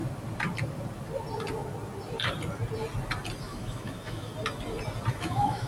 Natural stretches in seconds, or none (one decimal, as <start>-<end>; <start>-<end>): 0.0-3.4; 4.3-5.1